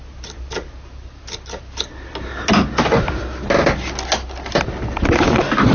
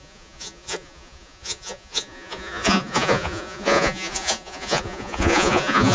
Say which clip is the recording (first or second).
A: first